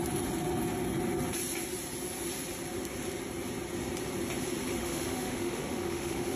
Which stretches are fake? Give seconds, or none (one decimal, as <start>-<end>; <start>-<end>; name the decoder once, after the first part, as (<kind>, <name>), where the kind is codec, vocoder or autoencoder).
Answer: 4.8-6.4 (autoencoder, DAC-VAE)